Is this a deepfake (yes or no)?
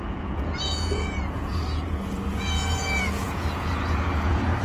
yes